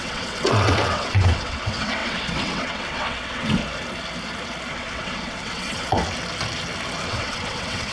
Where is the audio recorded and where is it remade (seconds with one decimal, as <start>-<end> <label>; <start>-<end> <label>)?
0.0-3.6 remade; 3.6-4.7 recorded; 4.7-6.0 remade; 6.0-7.1 recorded; 7.1-7.9 remade